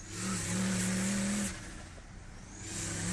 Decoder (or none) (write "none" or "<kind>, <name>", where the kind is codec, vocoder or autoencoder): none